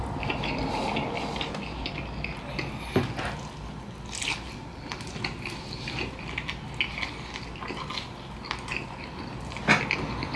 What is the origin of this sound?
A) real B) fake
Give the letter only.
A